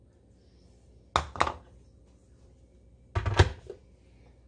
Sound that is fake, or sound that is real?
real